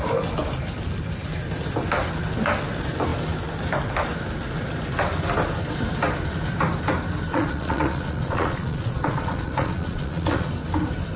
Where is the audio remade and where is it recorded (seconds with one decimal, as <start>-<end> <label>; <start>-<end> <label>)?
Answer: 0.0-7.3 recorded; 7.3-10.5 remade; 10.5-11.2 recorded